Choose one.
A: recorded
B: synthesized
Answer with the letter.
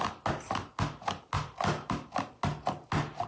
A